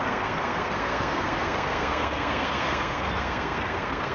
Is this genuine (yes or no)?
no